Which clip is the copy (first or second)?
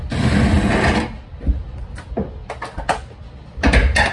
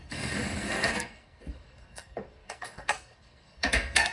second